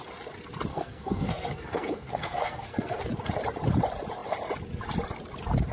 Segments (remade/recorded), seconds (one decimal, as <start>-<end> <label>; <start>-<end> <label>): 0.0-0.7 recorded; 0.7-3.0 remade; 3.0-5.7 recorded